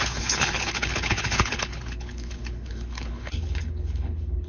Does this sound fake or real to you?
fake